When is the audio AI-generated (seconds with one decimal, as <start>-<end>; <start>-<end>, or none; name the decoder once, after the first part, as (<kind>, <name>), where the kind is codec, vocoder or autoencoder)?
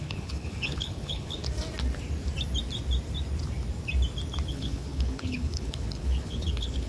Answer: 0.0-1.4 (codec, HILCodec); 4.5-6.9